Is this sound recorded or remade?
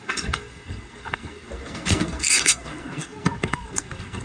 remade